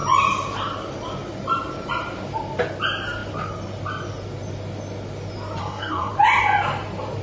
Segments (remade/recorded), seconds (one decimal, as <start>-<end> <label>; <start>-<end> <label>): 0.0-5.6 recorded; 5.6-6.1 remade; 6.1-7.2 recorded